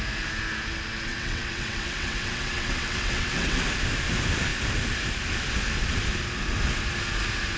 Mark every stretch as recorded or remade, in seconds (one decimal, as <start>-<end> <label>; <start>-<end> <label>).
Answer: 0.0-1.1 recorded; 1.1-3.6 remade; 3.6-7.6 recorded